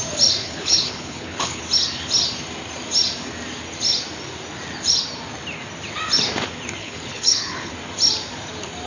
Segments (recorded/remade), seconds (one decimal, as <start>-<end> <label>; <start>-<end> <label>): 0.0-0.4 recorded; 0.4-1.6 remade; 1.6-6.8 recorded; 6.8-7.7 remade; 7.7-8.9 recorded